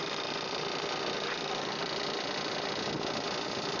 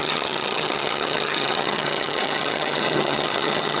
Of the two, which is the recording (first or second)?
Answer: first